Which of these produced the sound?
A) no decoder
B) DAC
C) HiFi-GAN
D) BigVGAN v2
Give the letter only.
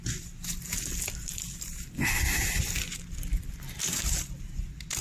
A